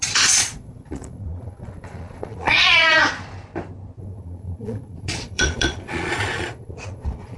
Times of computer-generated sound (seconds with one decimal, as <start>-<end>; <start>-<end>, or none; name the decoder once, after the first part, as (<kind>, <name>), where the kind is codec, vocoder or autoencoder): 0.0-3.0 (vocoder, Vocos); 4.0-7.4